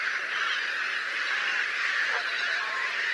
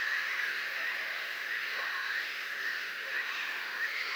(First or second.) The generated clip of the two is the second